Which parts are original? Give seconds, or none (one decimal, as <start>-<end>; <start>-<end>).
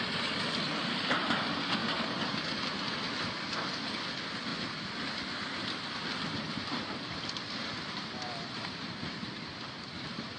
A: 1.8-3.2; 4.5-5.6